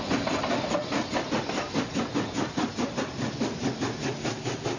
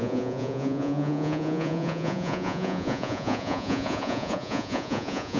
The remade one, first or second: second